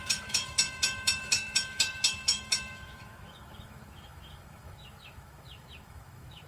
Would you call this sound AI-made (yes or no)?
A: yes